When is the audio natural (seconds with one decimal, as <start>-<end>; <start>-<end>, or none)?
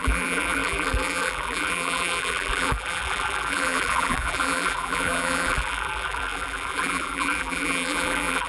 none